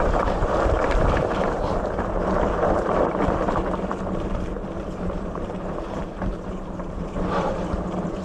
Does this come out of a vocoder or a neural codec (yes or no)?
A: yes